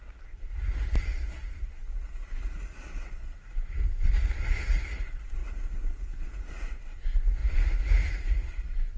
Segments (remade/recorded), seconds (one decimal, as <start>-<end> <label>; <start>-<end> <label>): 0.0-1.8 remade; 1.8-5.0 recorded; 5.0-9.0 remade